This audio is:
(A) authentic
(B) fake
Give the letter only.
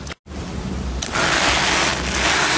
A